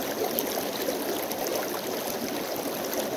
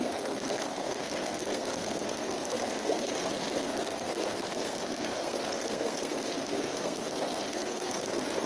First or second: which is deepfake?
second